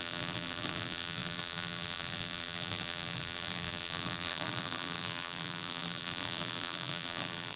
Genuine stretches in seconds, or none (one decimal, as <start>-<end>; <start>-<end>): none